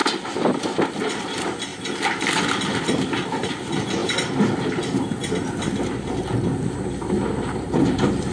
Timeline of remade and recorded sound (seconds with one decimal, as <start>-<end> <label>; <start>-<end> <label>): 0.0-1.1 recorded; 1.1-1.7 remade; 1.7-2.4 recorded; 2.4-8.3 remade